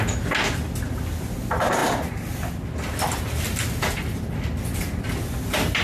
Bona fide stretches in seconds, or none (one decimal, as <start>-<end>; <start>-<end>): 0.0-5.8

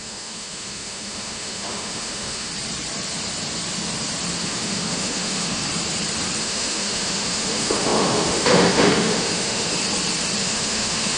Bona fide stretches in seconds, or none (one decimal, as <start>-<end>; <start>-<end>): 2.5-4.4; 5.6-6.4; 9.7-10.4